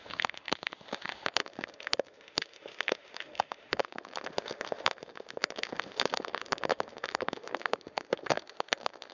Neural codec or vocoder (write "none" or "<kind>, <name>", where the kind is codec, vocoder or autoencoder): autoencoder, DAC-VAE